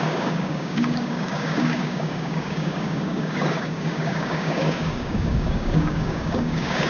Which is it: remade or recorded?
remade